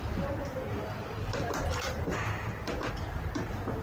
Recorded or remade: recorded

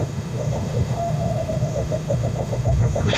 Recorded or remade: remade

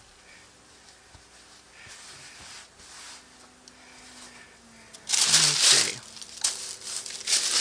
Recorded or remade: recorded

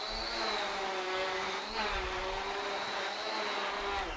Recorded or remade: recorded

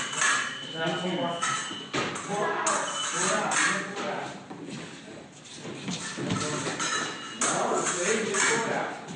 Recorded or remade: recorded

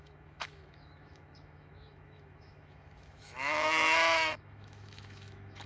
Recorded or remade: remade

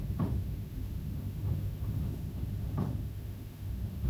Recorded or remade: remade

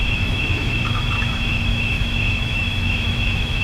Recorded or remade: remade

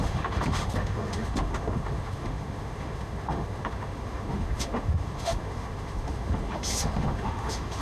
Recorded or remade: remade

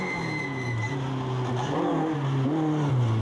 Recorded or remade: recorded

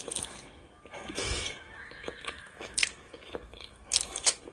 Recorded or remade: remade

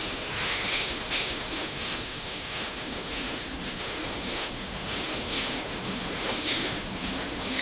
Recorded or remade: remade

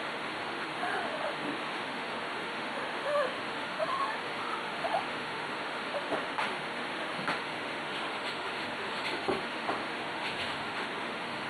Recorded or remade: remade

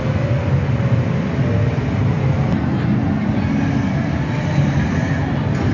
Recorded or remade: recorded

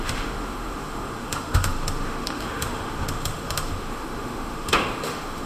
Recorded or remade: remade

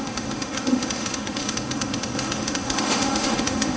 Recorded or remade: remade